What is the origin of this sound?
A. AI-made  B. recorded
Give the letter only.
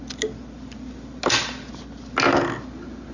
B